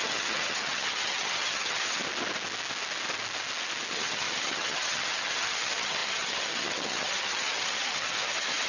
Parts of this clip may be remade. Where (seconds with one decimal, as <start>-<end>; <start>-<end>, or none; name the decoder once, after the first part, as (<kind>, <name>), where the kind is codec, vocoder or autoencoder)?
0.0-2.0 (vocoder, HiFi-GAN); 3.9-8.7